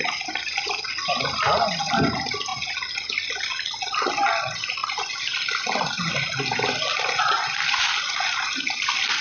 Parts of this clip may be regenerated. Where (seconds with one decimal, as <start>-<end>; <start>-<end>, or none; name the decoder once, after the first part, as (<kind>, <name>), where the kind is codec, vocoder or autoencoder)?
none